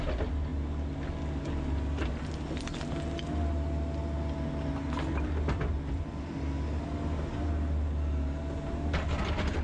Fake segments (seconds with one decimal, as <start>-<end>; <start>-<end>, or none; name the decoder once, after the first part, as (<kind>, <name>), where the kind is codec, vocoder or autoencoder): none